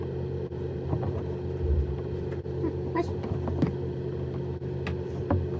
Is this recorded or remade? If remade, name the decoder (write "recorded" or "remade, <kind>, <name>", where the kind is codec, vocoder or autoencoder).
recorded